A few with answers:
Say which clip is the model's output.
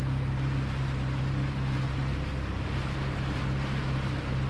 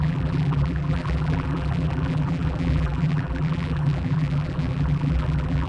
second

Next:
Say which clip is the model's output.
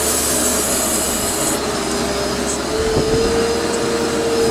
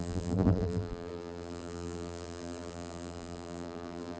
second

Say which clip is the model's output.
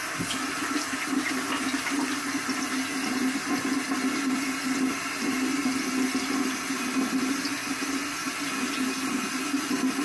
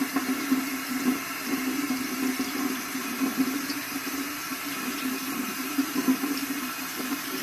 second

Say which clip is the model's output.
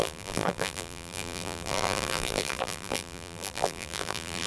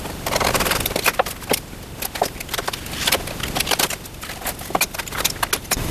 first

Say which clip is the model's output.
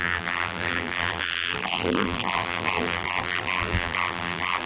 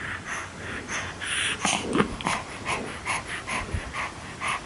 first